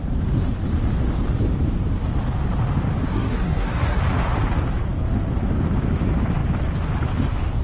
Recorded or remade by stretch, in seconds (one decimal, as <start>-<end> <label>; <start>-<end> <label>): 0.0-3.1 recorded; 3.1-4.0 remade; 4.0-7.6 recorded